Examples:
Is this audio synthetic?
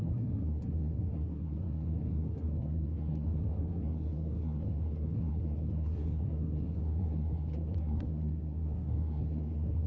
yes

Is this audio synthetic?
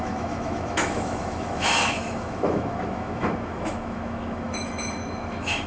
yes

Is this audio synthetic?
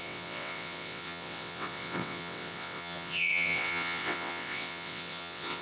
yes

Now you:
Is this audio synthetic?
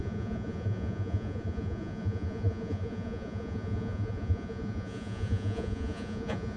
yes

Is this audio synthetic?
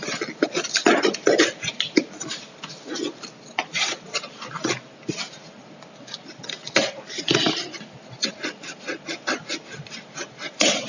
no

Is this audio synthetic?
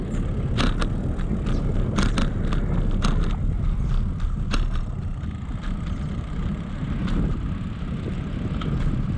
no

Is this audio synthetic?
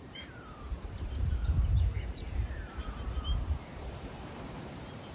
yes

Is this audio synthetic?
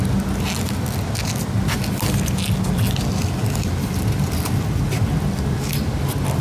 no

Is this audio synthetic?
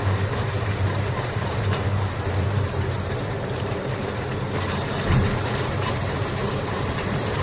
yes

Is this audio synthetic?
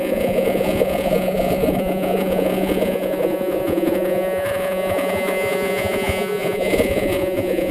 yes